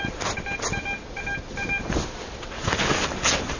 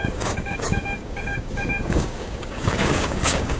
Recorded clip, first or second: first